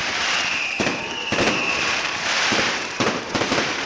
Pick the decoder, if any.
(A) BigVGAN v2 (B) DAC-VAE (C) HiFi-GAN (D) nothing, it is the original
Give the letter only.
A